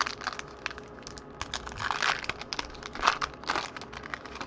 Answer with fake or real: real